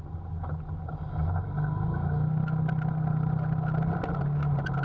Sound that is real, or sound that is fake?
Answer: real